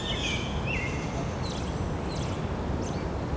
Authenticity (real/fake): real